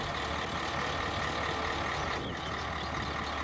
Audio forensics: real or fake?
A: real